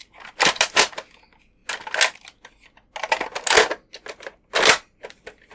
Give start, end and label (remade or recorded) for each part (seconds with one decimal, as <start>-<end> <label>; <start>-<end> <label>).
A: 0.0-5.5 recorded